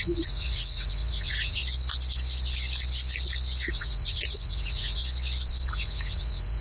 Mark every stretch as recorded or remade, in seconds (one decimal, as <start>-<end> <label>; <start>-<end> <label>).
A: 0.0-1.6 remade; 1.6-3.7 recorded; 3.7-5.0 remade; 5.0-5.7 recorded; 5.7-6.6 remade